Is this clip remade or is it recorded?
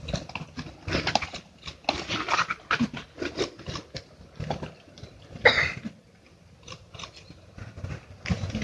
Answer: recorded